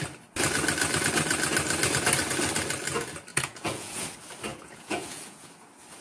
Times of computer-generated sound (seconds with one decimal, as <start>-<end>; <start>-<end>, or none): 3.3-4.1; 4.5-5.5

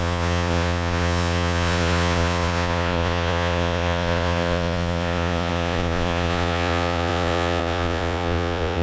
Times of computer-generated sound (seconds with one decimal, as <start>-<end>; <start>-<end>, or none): 0.0-8.8